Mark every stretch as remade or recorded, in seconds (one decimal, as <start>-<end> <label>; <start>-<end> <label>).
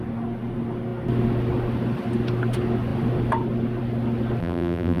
0.0-4.4 recorded; 4.4-5.0 remade